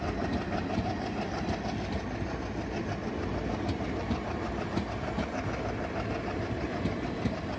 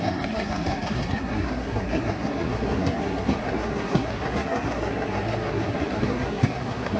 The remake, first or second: second